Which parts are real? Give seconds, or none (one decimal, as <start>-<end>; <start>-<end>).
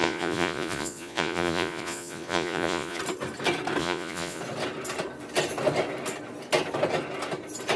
3.0-3.8; 4.4-7.8